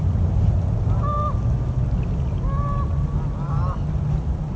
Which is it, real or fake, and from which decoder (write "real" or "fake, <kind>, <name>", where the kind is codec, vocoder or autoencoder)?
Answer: real